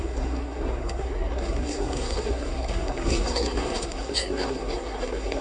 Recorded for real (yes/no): no